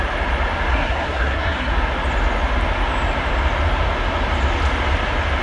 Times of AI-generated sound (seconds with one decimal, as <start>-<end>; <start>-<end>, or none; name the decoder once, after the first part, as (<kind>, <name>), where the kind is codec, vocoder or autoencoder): 0.7-1.7 (codec, SNAC)